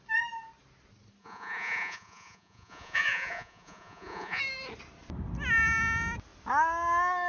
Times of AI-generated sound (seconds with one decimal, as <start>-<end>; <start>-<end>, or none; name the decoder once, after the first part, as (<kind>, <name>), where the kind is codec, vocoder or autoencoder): 1.2-4.4 (vocoder, Vocos)